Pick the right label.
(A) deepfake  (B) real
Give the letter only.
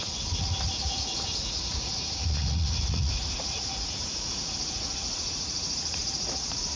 A